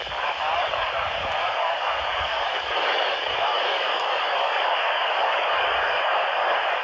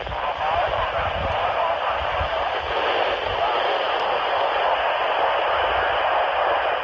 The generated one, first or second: first